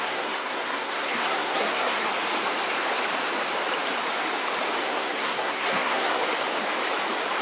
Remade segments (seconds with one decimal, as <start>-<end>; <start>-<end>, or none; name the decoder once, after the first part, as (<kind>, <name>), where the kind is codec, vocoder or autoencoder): 0.0-2.1 (codec, SNAC); 4.8-6.2